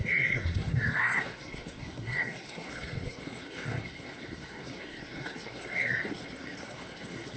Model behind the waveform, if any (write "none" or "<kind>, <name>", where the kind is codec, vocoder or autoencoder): codec, SNAC